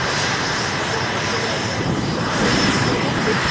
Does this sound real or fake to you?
fake